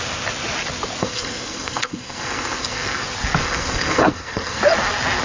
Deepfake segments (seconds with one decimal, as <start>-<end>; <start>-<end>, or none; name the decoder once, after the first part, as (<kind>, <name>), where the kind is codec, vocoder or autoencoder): 1.0-3.0 (codec, SNAC); 3.4-4.6